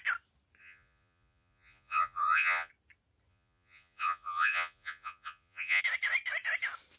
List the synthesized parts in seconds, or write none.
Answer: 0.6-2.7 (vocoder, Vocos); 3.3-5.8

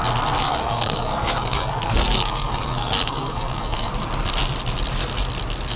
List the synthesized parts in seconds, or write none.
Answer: 0.4-3.9 (codec, SNAC)

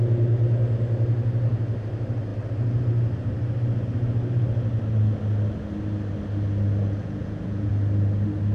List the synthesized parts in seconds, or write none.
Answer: 6.8-7.7 (vocoder, Vocos)

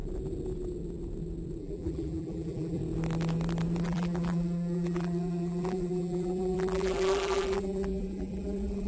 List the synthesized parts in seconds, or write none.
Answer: 1.6-2.8 (vocoder, BigVGAN v2); 3.8-8.9

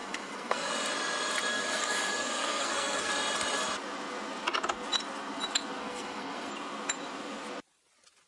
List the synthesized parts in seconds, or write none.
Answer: 0.0-0.7 (codec, SNAC); 1.5-3.1; 5.8-6.5

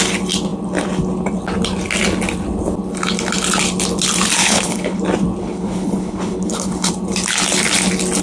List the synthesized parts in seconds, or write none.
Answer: 4.4-5.0 (codec, HILCodec); 5.4-6.9